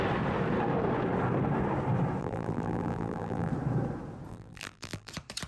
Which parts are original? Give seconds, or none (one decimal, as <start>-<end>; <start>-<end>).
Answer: 0.0-2.2; 3.5-4.3; 5.1-5.5